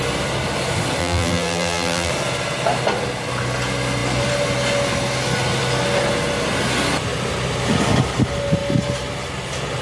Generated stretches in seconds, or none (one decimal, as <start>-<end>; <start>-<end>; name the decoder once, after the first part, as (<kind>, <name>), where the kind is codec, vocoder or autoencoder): 1.0-2.1 (vocoder, BigVGAN v2)